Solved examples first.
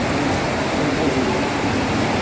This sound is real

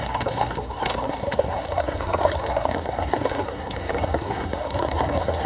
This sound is fake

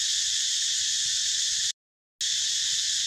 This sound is real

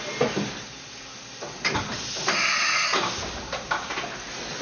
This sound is real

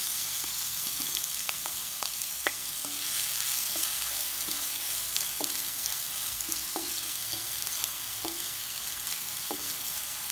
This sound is fake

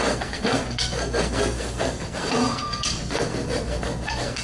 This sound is fake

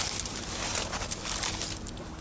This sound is real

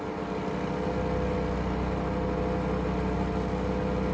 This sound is real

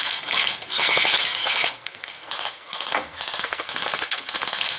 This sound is fake